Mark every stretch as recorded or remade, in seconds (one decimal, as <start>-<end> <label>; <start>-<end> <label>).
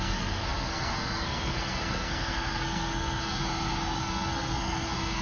0.0-3.4 remade; 3.4-4.0 recorded; 4.0-5.2 remade